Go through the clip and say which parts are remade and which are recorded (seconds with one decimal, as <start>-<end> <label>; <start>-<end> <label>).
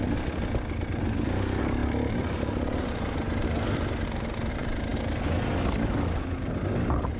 0.0-7.2 recorded